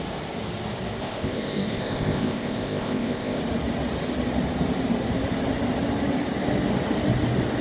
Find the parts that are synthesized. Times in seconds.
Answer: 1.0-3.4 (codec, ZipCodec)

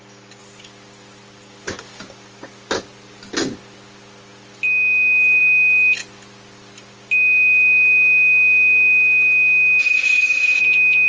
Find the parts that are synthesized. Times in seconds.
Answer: 9.8-10.6 (codec, ZipCodec)

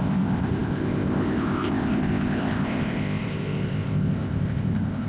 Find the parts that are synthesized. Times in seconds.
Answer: 0.0-5.1 (codec, ZipCodec)

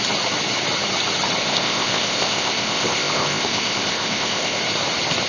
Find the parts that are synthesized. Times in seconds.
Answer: 1.4-4.6 (codec, ZipCodec)

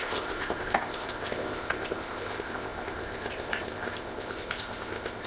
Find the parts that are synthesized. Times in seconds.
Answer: 0.0-5.3 (codec, ZipCodec)

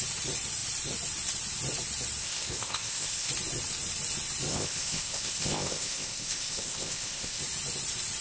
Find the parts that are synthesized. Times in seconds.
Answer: 2.2-3.3 (codec, ZipCodec); 4.5-7.4

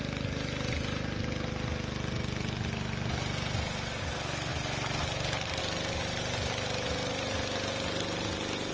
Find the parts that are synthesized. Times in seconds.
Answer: none